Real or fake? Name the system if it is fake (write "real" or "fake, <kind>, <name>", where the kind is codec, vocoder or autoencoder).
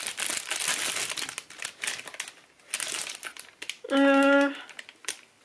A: real